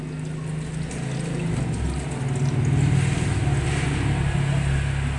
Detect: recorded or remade recorded